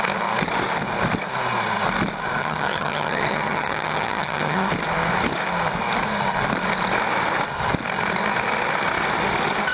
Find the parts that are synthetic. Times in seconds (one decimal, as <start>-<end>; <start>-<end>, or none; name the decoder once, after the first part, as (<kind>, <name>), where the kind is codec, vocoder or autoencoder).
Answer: 2.4-4.7 (vocoder, HiFi-GAN)